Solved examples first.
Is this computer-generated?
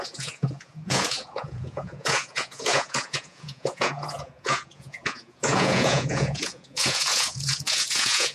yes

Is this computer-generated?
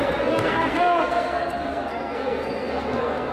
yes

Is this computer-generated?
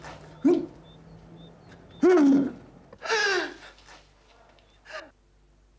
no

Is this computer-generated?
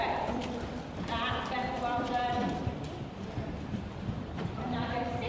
yes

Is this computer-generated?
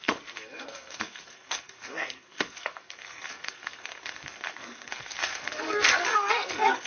yes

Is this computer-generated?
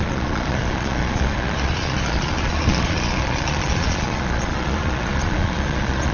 yes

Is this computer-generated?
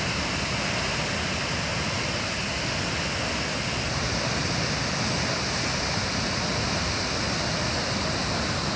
no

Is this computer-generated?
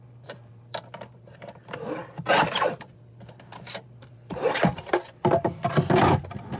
yes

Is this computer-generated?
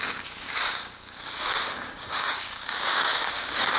yes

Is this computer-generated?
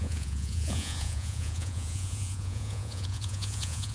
yes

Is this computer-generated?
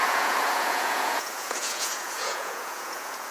yes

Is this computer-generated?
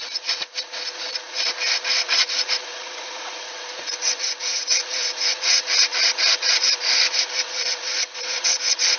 yes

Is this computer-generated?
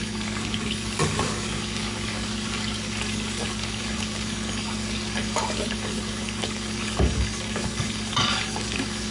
yes